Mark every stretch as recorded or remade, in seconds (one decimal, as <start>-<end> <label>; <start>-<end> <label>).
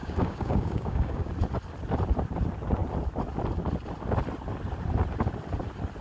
0.0-1.3 remade; 1.3-6.0 recorded